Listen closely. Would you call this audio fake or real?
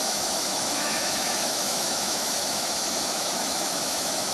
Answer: fake